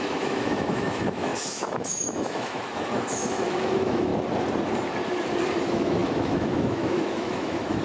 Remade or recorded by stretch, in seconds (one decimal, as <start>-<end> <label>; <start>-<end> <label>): 0.0-4.1 remade; 4.1-5.6 recorded; 5.6-7.8 remade